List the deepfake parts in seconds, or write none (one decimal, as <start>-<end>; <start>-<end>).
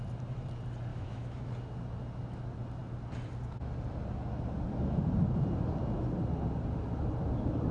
0.9-1.5